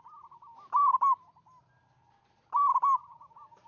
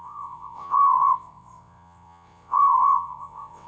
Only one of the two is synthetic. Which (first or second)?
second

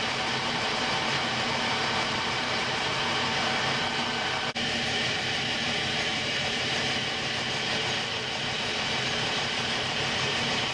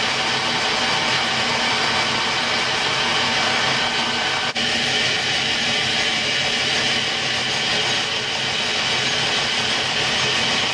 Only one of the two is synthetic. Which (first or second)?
first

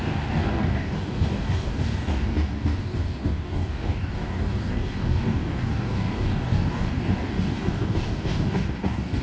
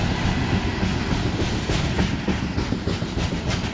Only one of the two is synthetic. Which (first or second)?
first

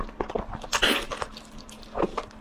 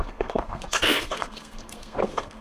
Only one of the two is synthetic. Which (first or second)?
second